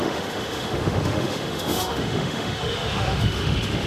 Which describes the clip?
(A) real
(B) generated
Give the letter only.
B